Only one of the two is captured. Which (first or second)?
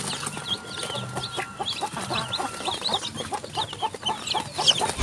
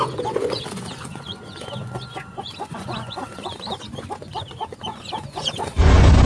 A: first